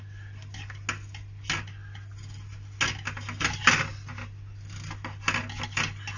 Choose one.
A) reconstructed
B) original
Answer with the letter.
B